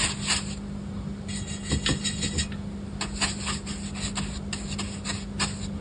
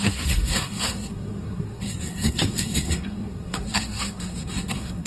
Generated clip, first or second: second